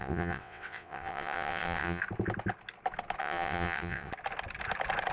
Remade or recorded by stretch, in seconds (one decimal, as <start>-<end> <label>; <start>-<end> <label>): 0.0-2.0 remade; 2.0-3.2 recorded; 3.2-4.1 remade; 4.1-5.1 recorded